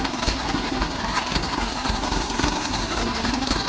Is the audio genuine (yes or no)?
no